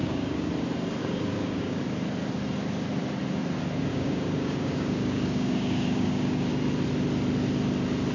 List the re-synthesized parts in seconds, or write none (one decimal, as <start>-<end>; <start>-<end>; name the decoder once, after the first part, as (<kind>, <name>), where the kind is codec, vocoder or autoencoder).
0.0-0.5 (codec, DAC); 1.0-1.8; 3.9-6.5